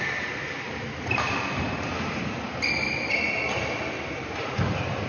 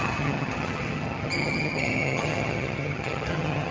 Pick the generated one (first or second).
second